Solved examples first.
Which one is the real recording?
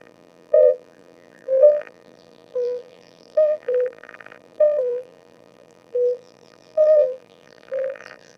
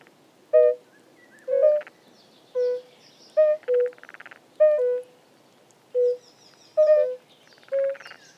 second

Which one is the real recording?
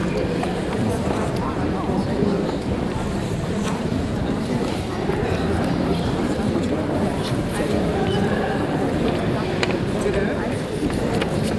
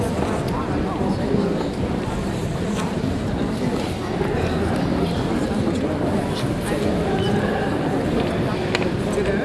second